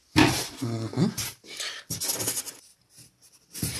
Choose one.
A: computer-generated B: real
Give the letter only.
B